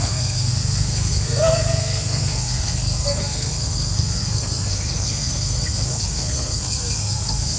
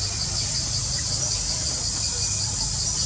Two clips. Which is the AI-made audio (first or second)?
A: first